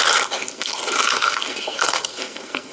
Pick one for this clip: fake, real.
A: fake